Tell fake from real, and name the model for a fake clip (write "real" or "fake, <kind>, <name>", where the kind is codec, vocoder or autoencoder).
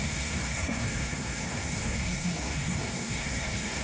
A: fake, codec, SNAC